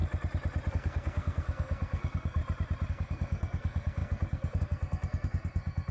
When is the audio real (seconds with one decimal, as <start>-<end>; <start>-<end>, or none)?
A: 0.0-0.7; 2.4-2.9